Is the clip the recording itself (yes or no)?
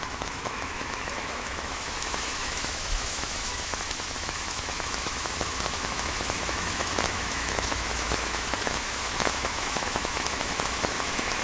no